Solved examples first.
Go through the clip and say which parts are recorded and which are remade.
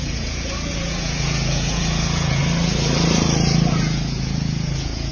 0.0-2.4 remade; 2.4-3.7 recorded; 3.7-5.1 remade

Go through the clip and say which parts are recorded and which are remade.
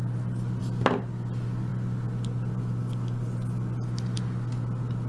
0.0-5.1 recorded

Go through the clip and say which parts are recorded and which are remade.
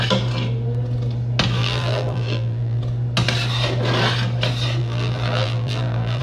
0.0-1.6 recorded; 1.6-2.8 remade; 2.8-4.8 recorded; 4.8-6.2 remade